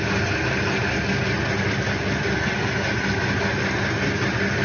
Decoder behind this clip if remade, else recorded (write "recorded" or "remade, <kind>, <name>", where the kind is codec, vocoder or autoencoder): recorded